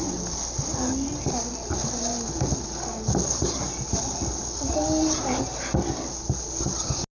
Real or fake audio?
real